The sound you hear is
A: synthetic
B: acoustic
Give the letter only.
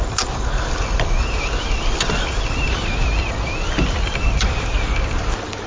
B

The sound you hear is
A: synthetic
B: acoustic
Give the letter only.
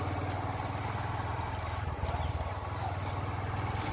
B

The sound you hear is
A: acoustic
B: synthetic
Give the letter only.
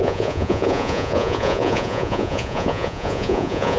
B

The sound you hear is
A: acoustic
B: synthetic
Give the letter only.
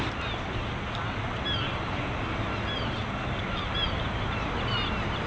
A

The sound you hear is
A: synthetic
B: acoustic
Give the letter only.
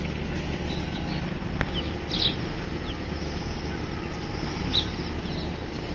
B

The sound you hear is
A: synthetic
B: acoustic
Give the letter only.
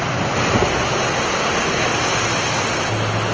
B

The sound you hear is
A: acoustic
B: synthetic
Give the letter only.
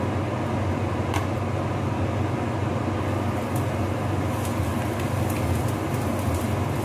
A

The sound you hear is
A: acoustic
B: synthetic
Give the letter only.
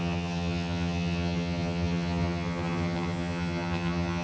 B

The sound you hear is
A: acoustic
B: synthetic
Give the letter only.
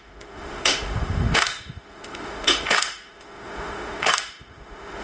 B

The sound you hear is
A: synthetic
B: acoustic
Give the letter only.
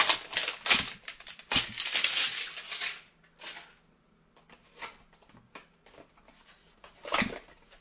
B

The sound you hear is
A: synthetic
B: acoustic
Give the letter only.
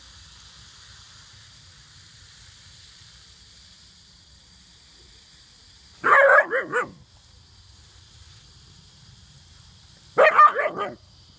B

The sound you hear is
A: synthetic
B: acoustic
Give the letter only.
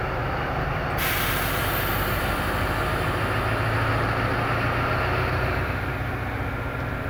B